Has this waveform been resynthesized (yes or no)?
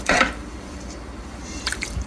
yes